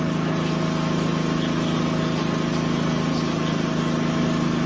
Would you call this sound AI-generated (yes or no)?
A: no